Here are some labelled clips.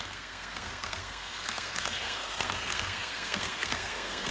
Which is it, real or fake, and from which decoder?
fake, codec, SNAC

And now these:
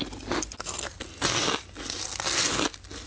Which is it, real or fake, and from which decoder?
real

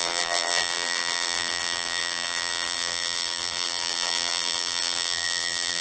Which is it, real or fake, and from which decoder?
fake, vocoder, BigVGAN v2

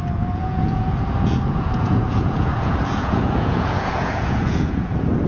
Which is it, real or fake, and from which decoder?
fake, vocoder, Vocos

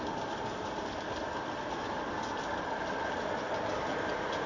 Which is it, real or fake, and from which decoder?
real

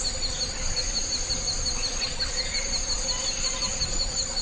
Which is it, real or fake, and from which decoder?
real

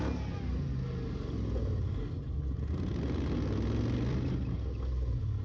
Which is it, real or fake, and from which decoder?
real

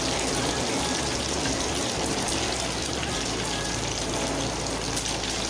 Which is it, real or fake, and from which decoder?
real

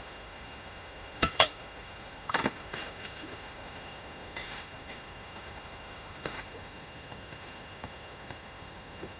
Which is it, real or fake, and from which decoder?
fake, autoencoder, DAC-VAE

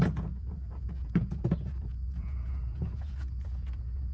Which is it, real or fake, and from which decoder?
fake, vocoder, Vocos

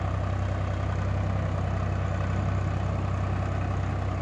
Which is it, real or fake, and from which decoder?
real